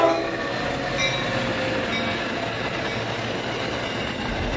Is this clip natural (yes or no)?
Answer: yes